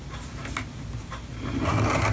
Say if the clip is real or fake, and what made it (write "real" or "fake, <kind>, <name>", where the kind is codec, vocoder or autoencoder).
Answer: real